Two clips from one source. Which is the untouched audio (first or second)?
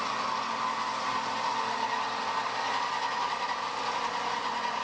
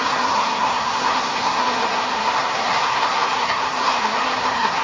first